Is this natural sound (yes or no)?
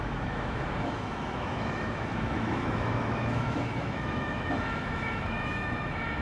no